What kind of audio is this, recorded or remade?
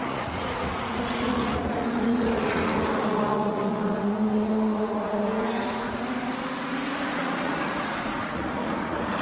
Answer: remade